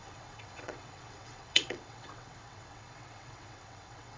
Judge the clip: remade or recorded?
remade